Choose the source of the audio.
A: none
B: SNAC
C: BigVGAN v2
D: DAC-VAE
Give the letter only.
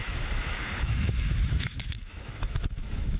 D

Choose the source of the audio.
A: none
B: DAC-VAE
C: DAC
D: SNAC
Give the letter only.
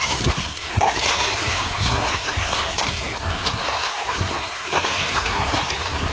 D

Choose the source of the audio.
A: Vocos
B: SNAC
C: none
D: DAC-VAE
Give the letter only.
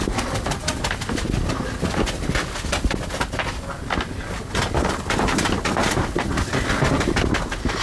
C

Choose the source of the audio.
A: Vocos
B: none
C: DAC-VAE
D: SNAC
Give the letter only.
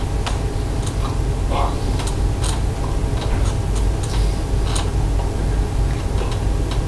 B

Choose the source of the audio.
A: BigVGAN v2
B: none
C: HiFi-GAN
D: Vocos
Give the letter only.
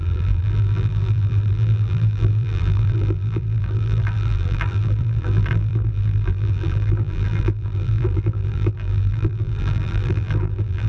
A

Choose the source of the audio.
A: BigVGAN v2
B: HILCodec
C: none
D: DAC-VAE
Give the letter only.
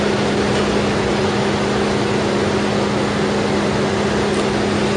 C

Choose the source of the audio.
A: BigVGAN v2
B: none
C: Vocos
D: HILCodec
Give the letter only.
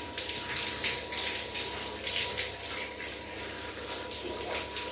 B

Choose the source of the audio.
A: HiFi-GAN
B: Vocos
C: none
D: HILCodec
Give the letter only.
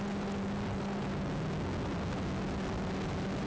C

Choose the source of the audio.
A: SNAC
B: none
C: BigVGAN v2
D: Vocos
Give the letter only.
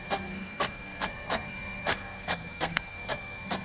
A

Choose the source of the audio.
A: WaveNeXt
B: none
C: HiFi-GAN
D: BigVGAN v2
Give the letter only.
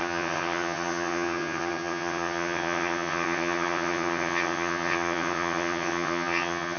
C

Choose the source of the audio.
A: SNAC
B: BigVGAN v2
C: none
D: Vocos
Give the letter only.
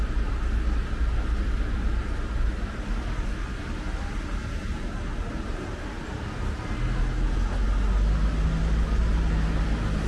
C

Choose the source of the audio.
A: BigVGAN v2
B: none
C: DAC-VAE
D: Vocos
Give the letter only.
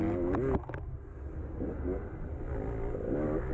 B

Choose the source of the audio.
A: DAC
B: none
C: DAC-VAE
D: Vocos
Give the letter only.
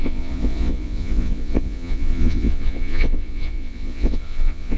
D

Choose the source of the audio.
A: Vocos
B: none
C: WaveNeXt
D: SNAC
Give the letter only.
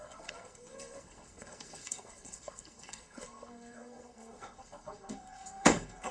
D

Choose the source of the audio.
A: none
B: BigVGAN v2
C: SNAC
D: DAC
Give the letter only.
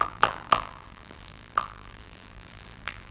B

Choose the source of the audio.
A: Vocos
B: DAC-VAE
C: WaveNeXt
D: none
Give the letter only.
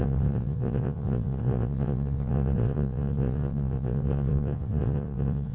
C